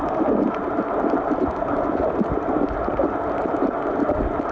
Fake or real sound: real